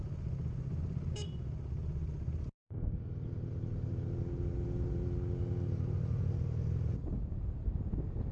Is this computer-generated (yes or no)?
no